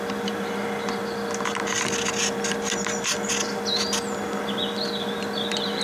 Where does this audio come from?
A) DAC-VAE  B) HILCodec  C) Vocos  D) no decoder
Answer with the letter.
D